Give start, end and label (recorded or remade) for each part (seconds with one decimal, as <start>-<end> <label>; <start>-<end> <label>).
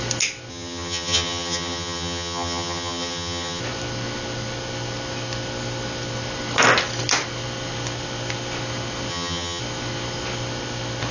0.0-0.5 recorded; 0.5-3.6 remade; 3.6-9.1 recorded; 9.1-9.6 remade; 9.6-11.1 recorded